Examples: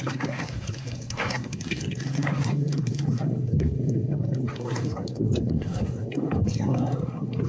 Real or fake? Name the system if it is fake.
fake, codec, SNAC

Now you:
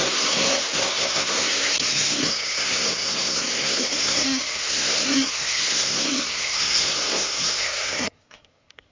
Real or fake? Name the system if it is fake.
fake, codec, SNAC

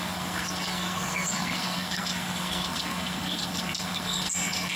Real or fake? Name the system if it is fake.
fake, codec, SNAC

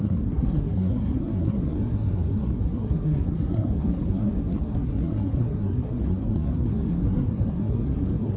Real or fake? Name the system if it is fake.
fake, codec, SNAC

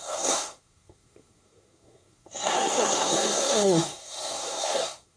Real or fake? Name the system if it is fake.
fake, codec, SNAC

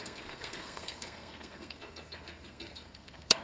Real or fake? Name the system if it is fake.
fake, codec, SNAC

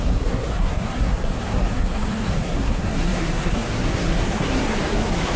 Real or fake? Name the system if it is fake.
fake, codec, SNAC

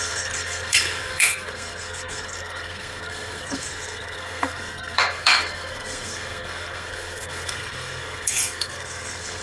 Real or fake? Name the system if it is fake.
fake, codec, SNAC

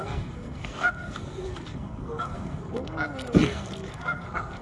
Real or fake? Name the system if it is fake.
fake, codec, SNAC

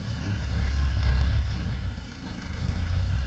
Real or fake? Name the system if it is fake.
fake, codec, SNAC